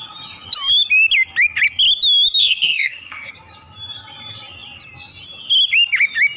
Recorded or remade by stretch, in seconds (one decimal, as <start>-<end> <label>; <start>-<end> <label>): 0.0-2.4 recorded; 2.4-3.3 remade; 3.3-6.4 recorded